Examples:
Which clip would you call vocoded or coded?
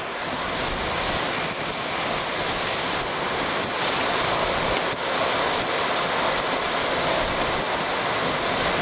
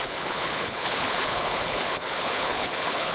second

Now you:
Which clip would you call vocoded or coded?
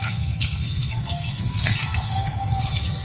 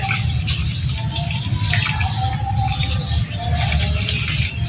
first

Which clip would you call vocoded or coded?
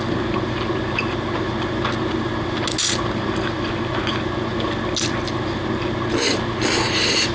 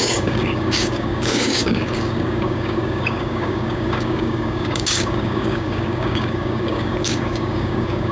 second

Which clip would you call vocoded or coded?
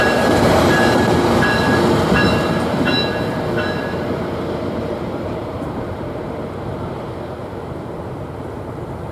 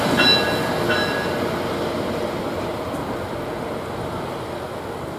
first